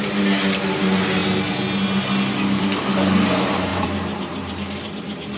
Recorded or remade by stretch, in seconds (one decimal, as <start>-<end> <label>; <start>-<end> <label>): 0.0-3.7 recorded; 3.7-4.9 remade; 4.9-5.4 recorded